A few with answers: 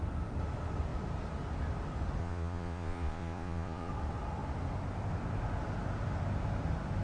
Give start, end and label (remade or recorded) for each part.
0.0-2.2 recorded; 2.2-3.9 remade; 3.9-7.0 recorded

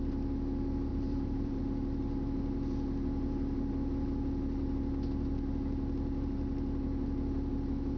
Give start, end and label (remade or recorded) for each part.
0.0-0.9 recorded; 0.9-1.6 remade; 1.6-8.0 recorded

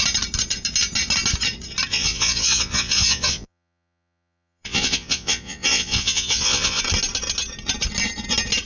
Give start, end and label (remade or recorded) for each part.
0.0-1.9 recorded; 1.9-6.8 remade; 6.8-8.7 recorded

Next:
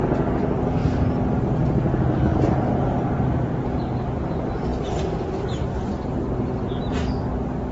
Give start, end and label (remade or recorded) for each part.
0.0-2.3 recorded; 2.3-3.9 remade; 3.9-7.7 recorded

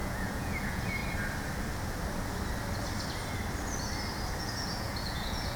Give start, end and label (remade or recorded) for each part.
0.0-1.0 remade; 1.0-4.4 recorded; 4.4-5.6 remade

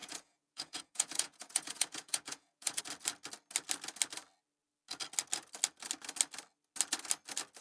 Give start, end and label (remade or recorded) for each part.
0.0-2.8 remade; 2.8-7.6 recorded